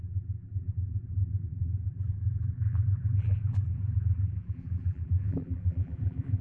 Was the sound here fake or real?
fake